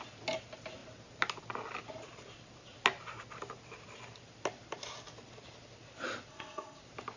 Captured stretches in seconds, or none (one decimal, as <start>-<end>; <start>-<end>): 0.0-6.3; 6.8-7.2